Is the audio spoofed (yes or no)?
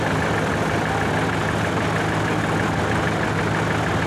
no